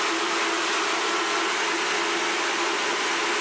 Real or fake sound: real